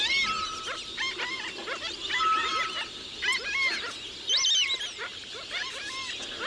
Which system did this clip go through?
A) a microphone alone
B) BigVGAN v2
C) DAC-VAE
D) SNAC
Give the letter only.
A